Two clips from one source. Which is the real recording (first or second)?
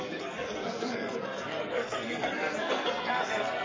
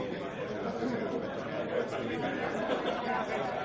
second